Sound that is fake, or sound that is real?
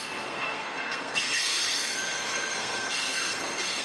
fake